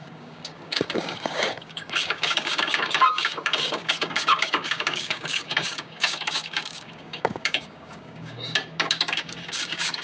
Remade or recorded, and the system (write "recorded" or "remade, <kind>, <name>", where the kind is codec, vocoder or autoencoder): remade, codec, DAC